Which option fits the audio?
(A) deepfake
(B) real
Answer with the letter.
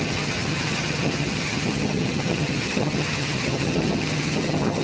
A